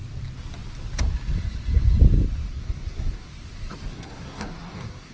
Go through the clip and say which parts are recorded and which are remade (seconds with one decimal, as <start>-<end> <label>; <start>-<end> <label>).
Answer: 0.0-2.5 recorded; 2.5-3.3 remade; 3.3-3.9 recorded; 3.9-5.1 remade

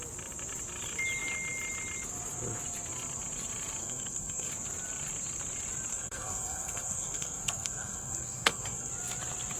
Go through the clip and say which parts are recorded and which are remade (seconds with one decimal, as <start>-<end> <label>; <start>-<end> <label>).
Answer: 0.0-3.8 recorded; 3.8-4.5 remade; 4.5-5.9 recorded; 5.9-8.9 remade; 8.9-9.6 recorded

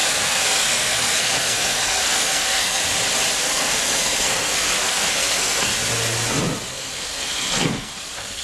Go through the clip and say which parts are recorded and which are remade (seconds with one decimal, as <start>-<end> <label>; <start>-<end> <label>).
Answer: 0.0-2.8 remade; 2.8-3.4 recorded; 3.4-5.7 remade; 5.7-6.7 recorded; 6.7-8.4 remade

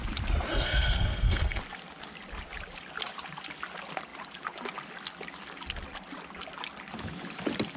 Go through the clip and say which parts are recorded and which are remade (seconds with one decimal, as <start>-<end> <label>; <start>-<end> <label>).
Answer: 0.0-0.5 recorded; 0.5-1.6 remade; 1.6-7.8 recorded